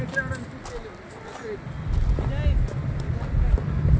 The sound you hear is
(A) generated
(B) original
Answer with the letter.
B